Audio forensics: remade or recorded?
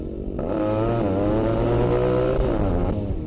recorded